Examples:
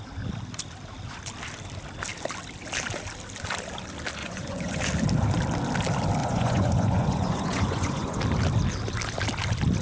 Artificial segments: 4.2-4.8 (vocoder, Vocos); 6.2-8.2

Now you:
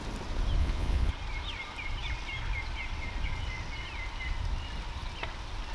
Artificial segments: 0.6-1.1 (vocoder, Vocos)

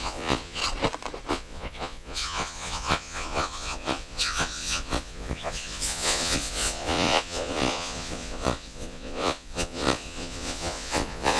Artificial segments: 0.0-0.6 (vocoder, Vocos); 1.3-11.4

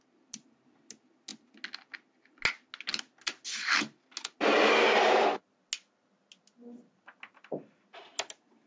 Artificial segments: none

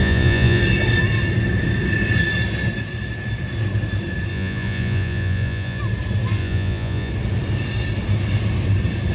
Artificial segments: 0.0-0.6 (vocoder, Vocos); 4.3-5.8; 6.4-7.1

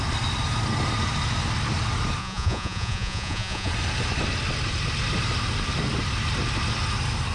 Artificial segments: 2.2-3.7 (vocoder, Vocos)

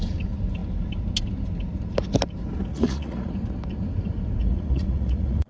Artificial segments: 2.7-3.3 (vocoder, Vocos); 4.4-5.5